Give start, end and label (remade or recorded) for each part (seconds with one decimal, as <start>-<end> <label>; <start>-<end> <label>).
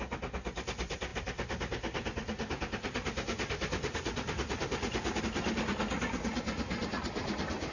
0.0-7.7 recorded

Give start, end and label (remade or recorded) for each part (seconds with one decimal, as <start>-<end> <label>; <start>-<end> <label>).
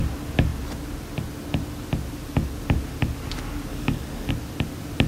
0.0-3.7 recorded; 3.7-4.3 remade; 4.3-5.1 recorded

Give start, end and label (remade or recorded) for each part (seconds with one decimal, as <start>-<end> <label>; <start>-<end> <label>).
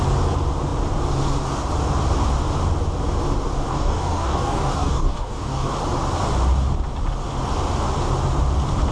0.0-3.7 recorded; 3.7-5.7 remade; 5.7-8.9 recorded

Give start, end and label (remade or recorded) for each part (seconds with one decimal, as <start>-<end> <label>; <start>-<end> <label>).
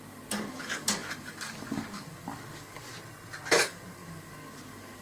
0.0-2.9 remade; 2.9-3.5 recorded; 3.5-5.0 remade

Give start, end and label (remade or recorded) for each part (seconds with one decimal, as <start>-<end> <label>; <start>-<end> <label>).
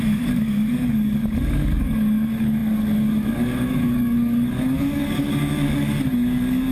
0.0-6.7 remade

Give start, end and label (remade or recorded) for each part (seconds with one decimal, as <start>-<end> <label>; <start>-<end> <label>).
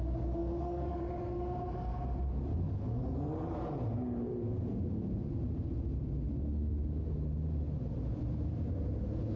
0.0-0.4 recorded; 0.4-0.9 remade; 0.9-2.5 recorded; 2.5-3.0 remade; 3.0-9.4 recorded